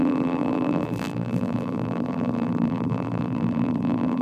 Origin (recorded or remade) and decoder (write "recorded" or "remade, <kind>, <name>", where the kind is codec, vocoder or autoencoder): remade, vocoder, BigVGAN v2